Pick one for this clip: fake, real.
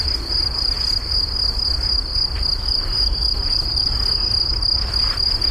real